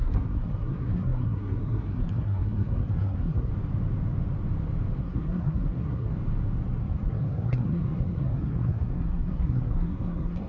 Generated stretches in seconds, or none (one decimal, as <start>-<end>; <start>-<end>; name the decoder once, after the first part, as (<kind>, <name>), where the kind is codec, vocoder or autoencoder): 0.0-3.5 (codec, SNAC); 5.0-6.1; 6.8-10.5